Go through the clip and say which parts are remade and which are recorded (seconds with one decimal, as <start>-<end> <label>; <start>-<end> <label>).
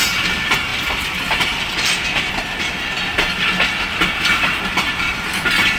0.0-0.7 recorded; 0.7-2.3 remade; 2.3-5.8 recorded